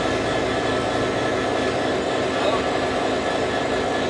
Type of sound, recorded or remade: recorded